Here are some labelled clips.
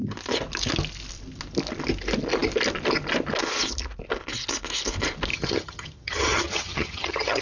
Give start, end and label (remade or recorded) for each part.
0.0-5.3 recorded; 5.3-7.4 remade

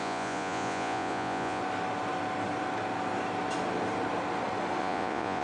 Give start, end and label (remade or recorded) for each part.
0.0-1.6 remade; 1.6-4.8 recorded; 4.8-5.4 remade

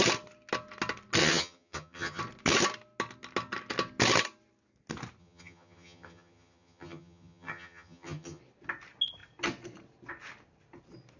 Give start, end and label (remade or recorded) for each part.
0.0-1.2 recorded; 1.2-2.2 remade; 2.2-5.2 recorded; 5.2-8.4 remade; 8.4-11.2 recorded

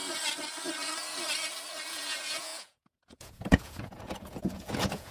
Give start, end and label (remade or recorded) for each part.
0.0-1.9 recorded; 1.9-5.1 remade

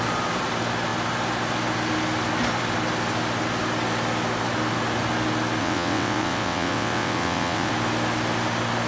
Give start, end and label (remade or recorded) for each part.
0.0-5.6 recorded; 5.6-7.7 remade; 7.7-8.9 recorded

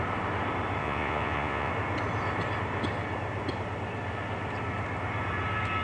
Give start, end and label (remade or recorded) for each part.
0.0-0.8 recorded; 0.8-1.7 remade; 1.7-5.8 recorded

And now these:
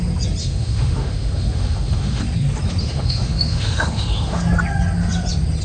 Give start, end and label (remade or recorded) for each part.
0.0-0.4 recorded; 0.4-2.2 remade; 2.2-2.8 recorded; 2.8-4.4 remade; 4.4-5.6 recorded

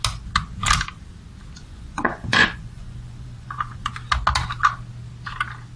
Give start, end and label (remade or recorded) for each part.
0.0-1.6 recorded; 1.6-3.9 remade; 3.9-5.8 recorded